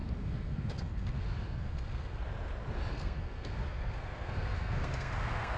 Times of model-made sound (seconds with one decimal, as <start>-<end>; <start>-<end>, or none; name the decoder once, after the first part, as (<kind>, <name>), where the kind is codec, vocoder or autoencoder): 0.0-2.2 (codec, SNAC); 2.9-5.6